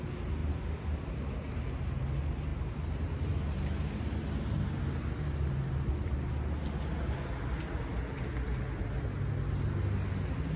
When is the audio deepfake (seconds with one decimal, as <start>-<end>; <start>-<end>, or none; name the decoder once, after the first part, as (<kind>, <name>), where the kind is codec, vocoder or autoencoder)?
none